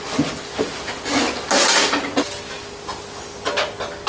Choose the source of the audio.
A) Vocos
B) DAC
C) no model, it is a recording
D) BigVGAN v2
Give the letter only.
C